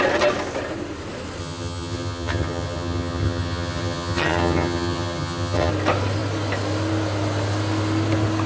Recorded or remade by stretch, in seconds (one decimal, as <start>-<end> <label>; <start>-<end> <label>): 0.0-1.4 recorded; 1.4-5.7 remade; 5.7-8.5 recorded

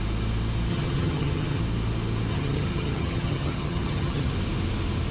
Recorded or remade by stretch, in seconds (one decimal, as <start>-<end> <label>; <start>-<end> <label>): 0.0-0.7 recorded; 0.7-1.6 remade; 1.6-2.3 recorded; 2.3-4.3 remade; 4.3-5.1 recorded